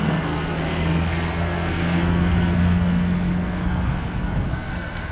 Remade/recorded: remade